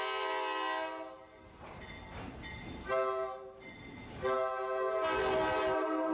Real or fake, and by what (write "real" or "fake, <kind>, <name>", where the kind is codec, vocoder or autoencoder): real